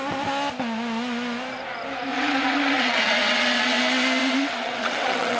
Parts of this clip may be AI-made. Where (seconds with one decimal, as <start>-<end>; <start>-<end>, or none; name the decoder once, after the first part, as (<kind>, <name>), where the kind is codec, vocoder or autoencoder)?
2.1-3.8 (vocoder, WaveNeXt); 4.2-5.4